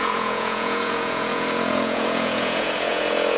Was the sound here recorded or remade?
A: remade